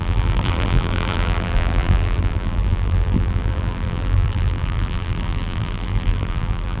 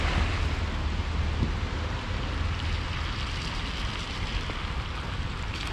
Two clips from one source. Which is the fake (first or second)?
first